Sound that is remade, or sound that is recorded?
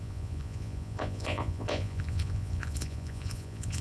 remade